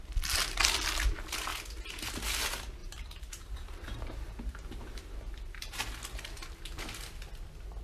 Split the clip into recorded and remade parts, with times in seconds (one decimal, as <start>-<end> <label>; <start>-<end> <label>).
0.0-1.5 recorded; 1.5-2.1 remade; 2.1-2.8 recorded; 2.8-5.8 remade; 5.8-7.8 recorded